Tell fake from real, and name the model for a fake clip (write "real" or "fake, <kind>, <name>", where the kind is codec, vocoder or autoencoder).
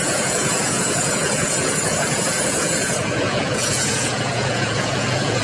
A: fake, vocoder, Vocos